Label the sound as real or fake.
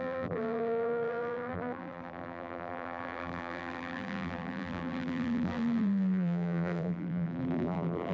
fake